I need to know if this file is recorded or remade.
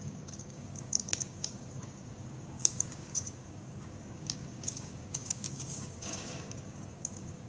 remade